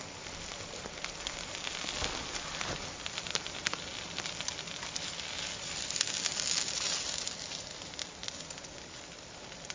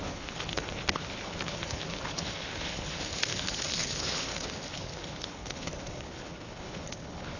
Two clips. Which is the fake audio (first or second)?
second